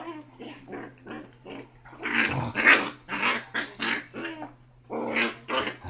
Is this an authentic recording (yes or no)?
yes